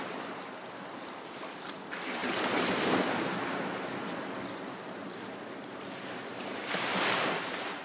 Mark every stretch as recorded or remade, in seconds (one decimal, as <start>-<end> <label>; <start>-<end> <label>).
0.0-7.8 recorded